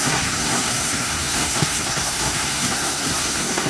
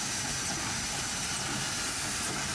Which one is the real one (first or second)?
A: second